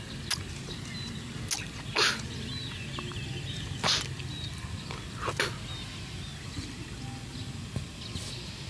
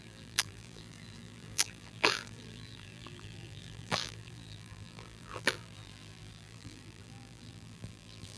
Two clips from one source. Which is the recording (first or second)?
first